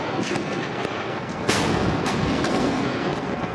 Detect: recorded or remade remade